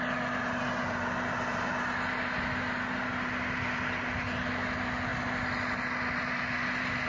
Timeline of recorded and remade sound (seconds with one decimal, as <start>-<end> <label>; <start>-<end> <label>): 0.0-7.1 recorded